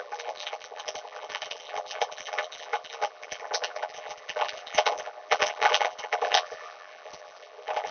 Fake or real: fake